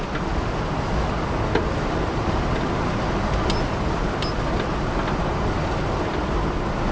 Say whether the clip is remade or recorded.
recorded